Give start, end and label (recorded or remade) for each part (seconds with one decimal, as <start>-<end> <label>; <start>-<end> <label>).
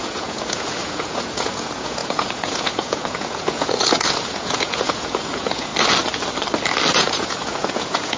0.0-5.7 remade; 5.7-6.9 recorded; 6.9-8.2 remade